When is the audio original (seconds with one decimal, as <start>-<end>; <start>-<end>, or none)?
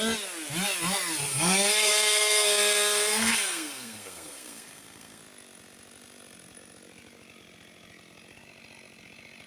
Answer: 0.0-1.3; 5.2-9.5